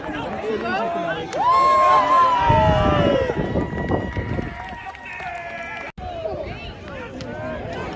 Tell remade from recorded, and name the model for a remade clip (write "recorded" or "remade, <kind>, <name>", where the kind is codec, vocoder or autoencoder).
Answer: recorded